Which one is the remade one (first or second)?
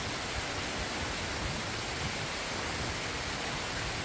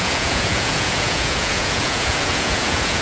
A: second